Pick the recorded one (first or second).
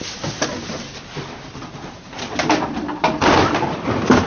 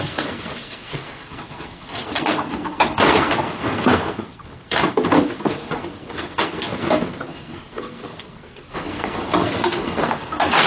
first